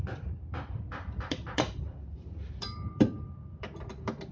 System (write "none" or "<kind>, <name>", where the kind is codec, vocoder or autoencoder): vocoder, BigVGAN v2